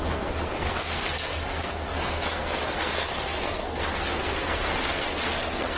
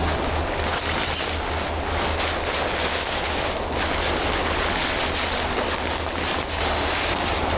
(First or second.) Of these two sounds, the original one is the second